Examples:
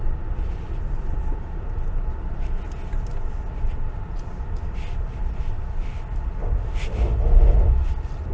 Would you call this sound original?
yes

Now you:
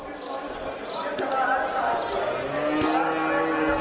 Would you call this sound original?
yes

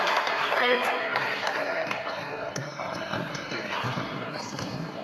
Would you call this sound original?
no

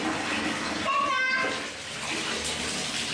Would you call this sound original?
yes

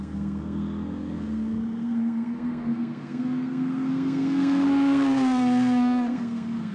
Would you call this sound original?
no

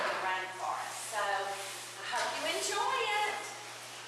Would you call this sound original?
yes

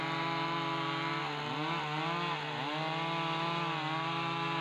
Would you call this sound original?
yes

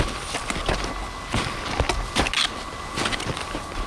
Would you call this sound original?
yes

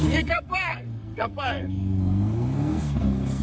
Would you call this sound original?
no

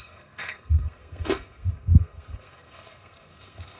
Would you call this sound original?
no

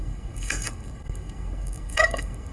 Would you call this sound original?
no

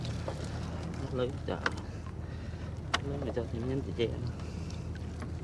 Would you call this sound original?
yes